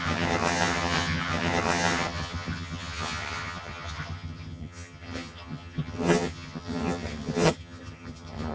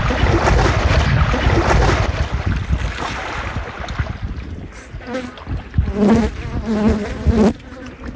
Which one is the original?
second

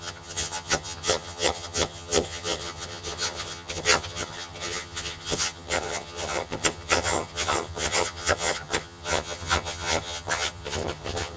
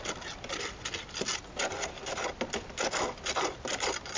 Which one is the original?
second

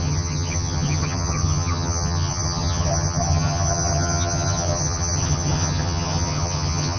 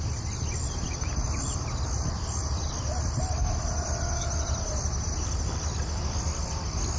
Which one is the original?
second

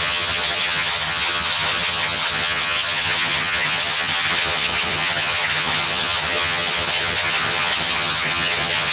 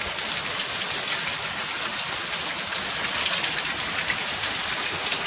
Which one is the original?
second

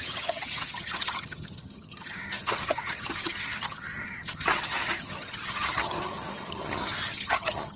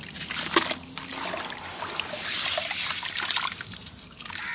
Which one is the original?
second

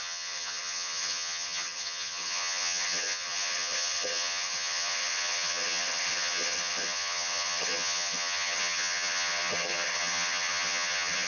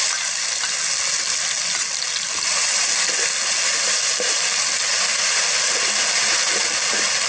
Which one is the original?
second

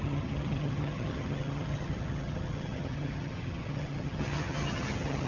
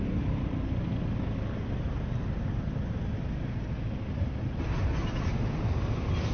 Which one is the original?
second